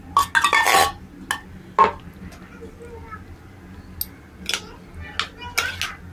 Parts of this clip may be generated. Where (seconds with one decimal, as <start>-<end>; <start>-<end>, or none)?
none